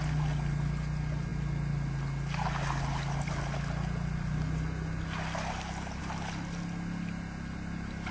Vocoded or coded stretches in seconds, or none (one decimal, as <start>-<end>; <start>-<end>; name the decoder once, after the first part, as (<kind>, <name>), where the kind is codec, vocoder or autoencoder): none